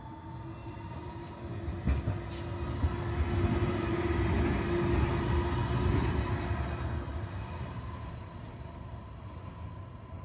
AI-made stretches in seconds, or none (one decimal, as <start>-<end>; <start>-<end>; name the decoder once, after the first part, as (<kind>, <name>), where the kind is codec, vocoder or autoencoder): 0.6-1.1 (vocoder, BigVGAN v2); 7.1-9.1